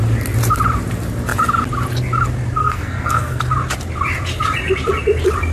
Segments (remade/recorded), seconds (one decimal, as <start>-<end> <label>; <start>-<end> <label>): 0.0-2.6 recorded; 2.6-3.4 remade; 3.4-5.5 recorded

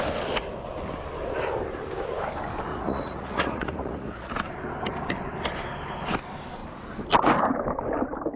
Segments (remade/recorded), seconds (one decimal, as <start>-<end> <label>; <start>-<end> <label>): 0.0-2.7 recorded; 2.7-4.3 remade; 4.3-8.4 recorded

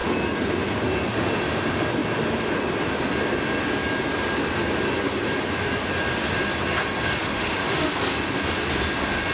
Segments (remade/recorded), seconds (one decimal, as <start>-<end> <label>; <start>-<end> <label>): 0.0-7.2 recorded; 7.2-7.9 remade; 7.9-9.3 recorded